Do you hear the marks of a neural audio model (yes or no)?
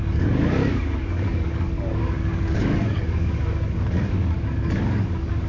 yes